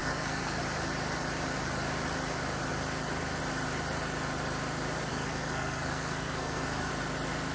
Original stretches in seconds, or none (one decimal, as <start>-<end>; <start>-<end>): 0.6-5.1; 6.9-7.5